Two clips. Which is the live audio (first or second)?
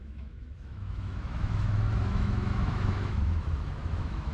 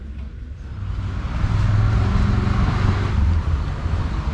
second